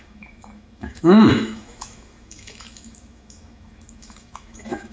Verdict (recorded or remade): remade